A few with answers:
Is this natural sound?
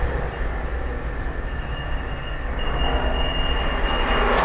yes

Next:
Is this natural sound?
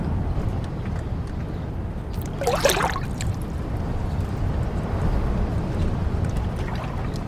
yes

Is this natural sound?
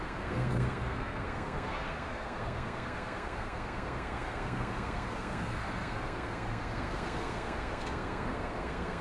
no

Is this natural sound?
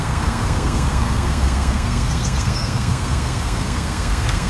no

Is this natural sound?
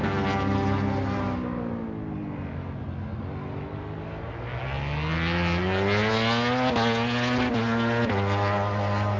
yes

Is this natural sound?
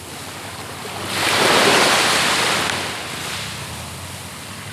yes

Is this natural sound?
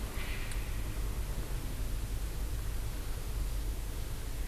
yes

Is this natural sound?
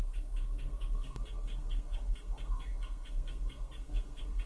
no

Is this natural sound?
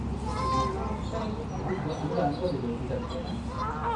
yes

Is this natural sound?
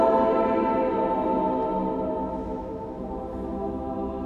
yes